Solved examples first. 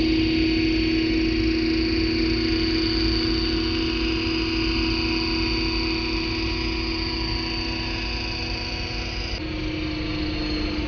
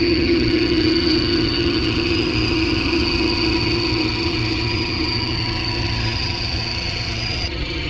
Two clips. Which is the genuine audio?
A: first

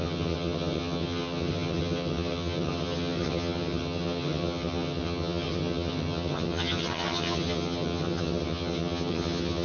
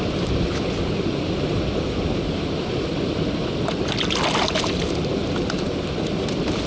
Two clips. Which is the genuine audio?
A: second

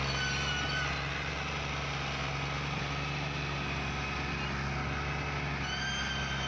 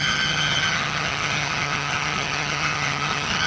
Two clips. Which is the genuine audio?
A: first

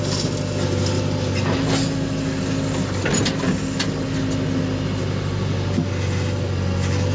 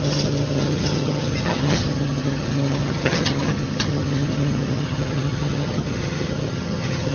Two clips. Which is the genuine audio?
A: first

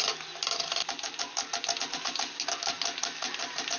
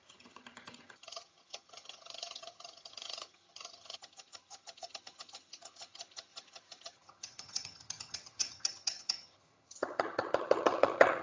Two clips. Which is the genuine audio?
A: first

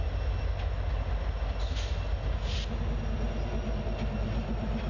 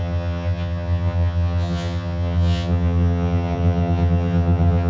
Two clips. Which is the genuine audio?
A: first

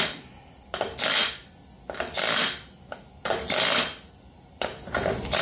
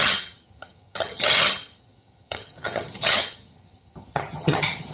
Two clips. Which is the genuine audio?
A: first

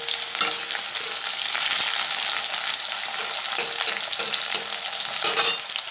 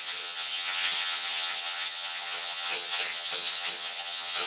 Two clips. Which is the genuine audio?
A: first